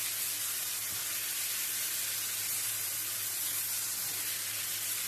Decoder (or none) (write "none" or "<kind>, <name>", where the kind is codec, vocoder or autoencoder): none